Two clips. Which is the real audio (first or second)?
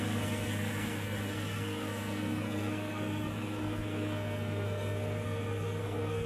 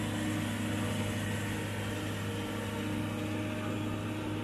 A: second